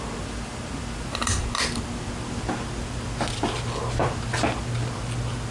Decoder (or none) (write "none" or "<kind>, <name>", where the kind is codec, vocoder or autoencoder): none